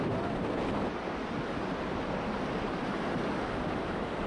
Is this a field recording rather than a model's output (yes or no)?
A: yes